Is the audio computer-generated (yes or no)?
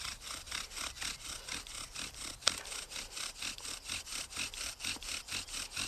yes